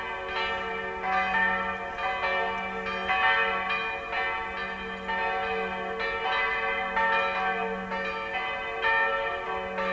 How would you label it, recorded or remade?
recorded